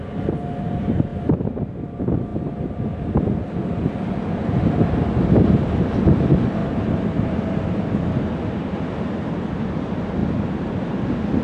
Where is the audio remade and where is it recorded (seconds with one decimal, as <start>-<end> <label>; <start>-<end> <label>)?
0.0-1.1 recorded; 1.1-1.7 remade; 1.7-2.3 recorded; 2.3-4.5 remade; 4.5-6.6 recorded; 6.6-7.9 remade; 7.9-11.4 recorded